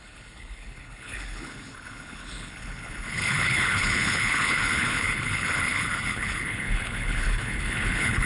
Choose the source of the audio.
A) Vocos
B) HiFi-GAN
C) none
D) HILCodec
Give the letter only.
D